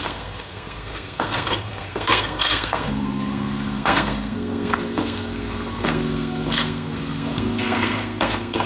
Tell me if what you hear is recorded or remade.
remade